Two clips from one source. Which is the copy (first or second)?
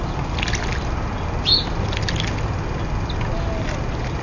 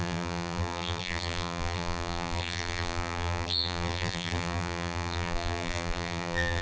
second